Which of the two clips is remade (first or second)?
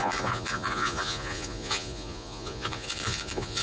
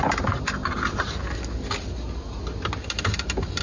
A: first